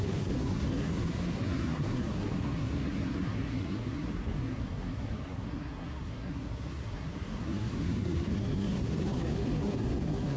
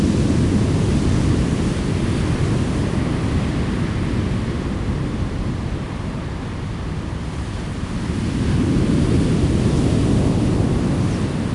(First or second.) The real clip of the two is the second